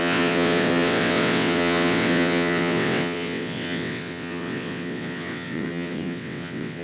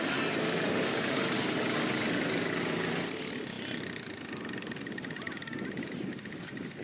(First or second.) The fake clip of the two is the first